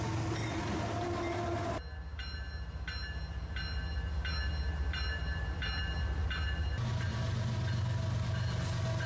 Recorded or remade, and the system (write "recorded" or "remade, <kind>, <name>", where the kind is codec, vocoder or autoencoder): recorded